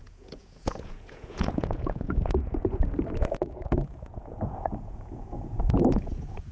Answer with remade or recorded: remade